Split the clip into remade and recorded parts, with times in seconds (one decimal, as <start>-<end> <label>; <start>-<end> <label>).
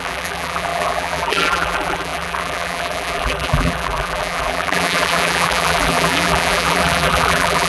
0.0-7.7 remade